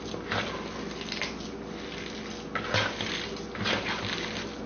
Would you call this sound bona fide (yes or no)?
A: yes